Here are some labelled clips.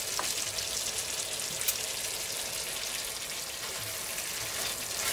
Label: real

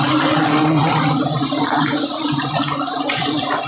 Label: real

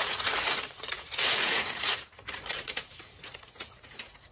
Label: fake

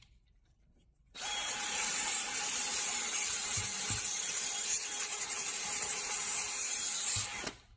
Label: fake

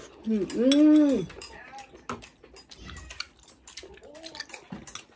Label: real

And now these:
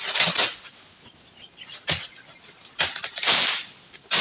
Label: real